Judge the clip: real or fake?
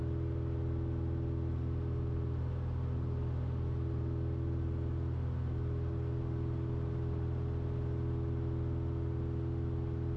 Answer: real